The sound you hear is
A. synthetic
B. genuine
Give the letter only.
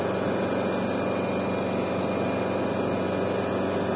B